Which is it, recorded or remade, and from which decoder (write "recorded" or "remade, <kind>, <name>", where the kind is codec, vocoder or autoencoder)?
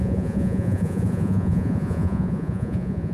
remade, vocoder, Vocos